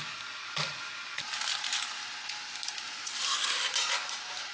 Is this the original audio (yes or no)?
yes